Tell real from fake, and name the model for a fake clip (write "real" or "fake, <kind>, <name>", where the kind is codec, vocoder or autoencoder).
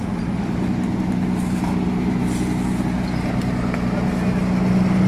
real